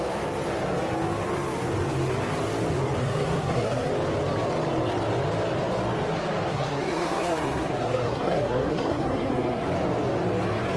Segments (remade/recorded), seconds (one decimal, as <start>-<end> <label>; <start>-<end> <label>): 0.0-3.0 recorded; 3.0-3.9 remade; 3.9-6.5 recorded; 6.5-9.7 remade; 9.7-10.8 recorded